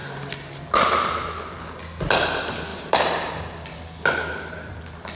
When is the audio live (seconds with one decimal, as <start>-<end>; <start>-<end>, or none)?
0.0-2.7; 3.3-5.1

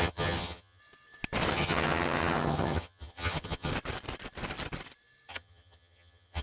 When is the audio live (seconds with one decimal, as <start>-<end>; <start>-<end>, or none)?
0.8-1.5; 3.7-5.3

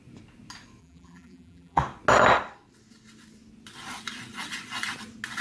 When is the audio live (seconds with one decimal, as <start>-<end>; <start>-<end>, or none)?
0.0-0.8; 1.8-5.4

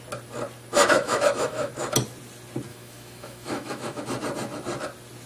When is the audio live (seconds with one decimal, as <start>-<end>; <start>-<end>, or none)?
0.0-0.8; 1.7-2.7; 4.0-5.3

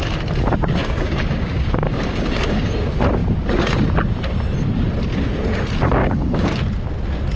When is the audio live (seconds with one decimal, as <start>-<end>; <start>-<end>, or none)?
0.0-0.8; 2.7-6.0; 6.6-7.4